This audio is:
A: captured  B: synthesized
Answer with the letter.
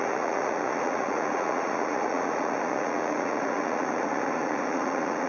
B